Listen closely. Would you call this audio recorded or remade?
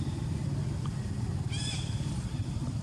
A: recorded